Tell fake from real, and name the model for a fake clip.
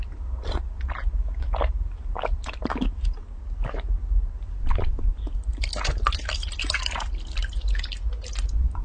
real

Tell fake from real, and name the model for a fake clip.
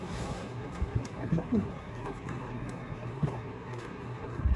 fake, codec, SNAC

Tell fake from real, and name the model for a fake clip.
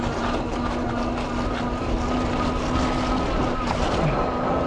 real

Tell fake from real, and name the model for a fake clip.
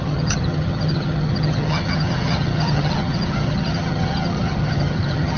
fake, vocoder, HiFi-GAN